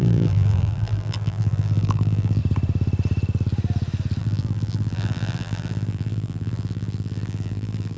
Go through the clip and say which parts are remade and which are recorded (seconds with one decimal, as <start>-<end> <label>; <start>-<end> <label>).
0.0-2.4 remade; 2.4-4.2 recorded; 4.2-8.0 remade